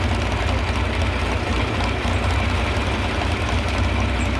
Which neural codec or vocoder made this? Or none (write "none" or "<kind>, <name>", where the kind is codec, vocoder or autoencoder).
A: none